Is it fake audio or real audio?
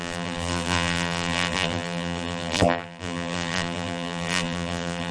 fake